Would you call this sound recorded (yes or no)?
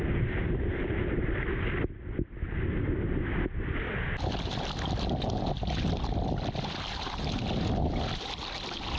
yes